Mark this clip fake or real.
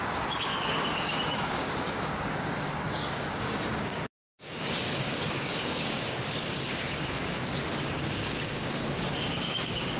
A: fake